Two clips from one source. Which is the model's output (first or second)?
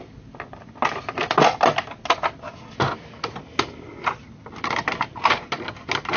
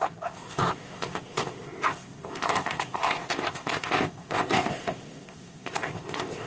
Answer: second